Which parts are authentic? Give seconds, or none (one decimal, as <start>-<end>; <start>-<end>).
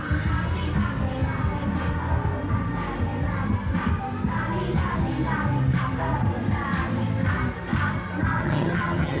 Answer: 0.0-8.3